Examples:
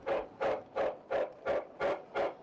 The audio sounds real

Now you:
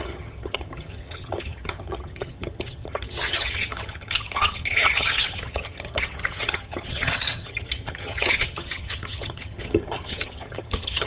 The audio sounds fake